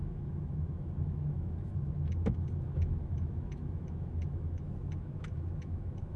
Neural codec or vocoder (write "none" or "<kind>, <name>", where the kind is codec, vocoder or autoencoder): autoencoder, DAC-VAE